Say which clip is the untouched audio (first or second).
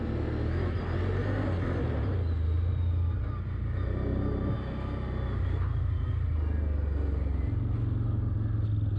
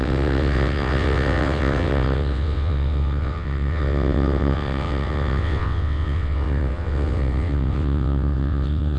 first